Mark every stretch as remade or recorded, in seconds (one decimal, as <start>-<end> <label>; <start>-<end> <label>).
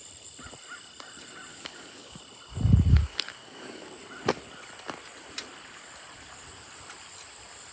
0.0-1.5 recorded; 1.5-2.2 remade; 2.2-2.9 recorded; 2.9-3.9 remade; 3.9-7.7 recorded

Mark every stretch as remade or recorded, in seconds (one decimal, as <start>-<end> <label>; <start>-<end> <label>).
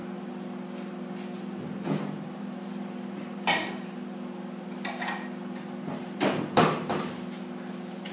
0.0-8.1 recorded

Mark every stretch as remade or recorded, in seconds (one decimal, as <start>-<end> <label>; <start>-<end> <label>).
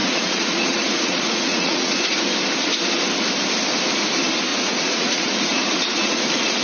0.0-2.2 remade; 2.2-4.5 recorded; 4.5-6.6 remade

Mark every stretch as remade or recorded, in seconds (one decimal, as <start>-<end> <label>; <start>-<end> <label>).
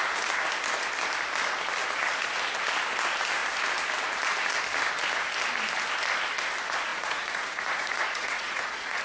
0.0-6.9 recorded; 6.9-9.0 remade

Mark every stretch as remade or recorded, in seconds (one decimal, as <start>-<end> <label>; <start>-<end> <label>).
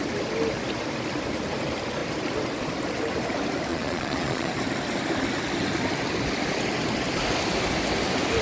0.0-3.7 recorded; 3.7-4.5 remade; 4.5-8.4 recorded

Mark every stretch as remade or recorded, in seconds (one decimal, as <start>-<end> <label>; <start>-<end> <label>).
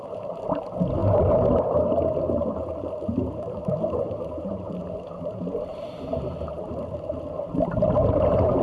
0.0-2.5 recorded; 2.5-6.7 remade; 6.7-8.6 recorded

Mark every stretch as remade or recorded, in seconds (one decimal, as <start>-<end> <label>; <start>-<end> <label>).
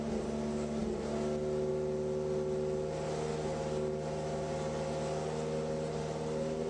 0.0-6.7 recorded